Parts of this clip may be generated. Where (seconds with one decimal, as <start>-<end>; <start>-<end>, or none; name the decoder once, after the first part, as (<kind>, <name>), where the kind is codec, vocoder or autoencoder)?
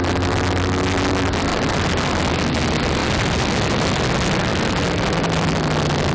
1.5-2.1 (vocoder, BigVGAN v2)